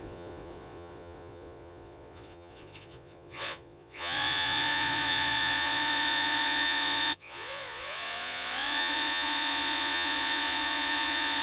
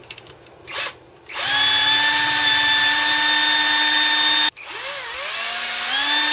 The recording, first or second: second